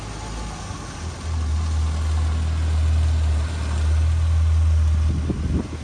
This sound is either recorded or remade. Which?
recorded